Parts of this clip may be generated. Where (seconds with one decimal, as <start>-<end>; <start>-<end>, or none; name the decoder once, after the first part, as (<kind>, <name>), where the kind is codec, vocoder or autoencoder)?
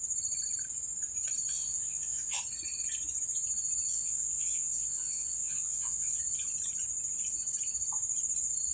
1.5-2.4 (vocoder, Vocos); 3.9-6.2